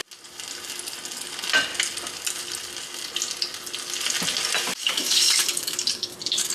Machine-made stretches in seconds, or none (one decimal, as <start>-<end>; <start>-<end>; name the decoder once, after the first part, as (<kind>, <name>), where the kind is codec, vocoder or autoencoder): 4.7-6.5 (codec, DAC)